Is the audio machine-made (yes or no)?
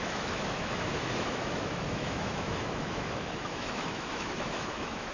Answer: yes